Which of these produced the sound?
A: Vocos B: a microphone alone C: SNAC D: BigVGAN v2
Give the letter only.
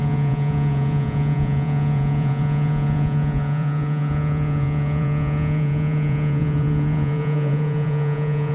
A